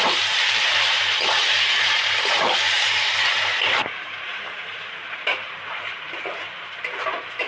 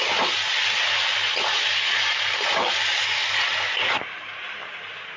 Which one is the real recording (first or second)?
second